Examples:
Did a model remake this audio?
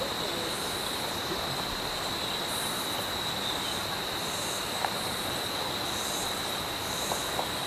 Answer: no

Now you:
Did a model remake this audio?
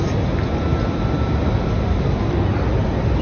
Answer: no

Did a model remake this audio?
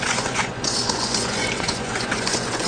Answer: yes